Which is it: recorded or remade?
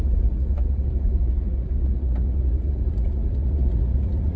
remade